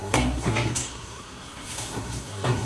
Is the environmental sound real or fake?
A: fake